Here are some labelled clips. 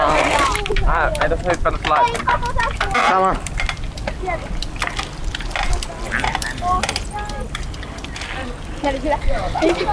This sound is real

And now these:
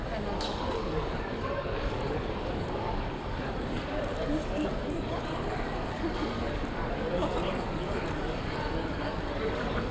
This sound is fake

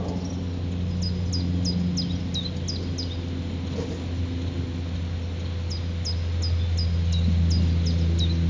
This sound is real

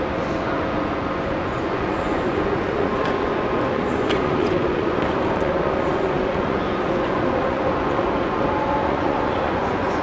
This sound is fake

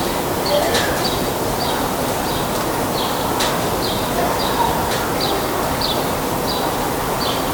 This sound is real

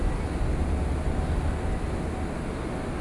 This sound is real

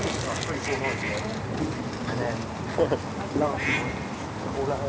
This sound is real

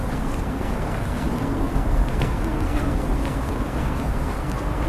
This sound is fake